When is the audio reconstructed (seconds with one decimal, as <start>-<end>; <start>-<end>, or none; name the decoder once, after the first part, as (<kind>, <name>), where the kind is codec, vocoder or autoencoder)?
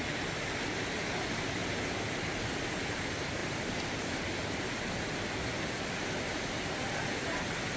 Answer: none